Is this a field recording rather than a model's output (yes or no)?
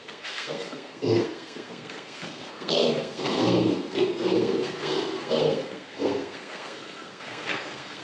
no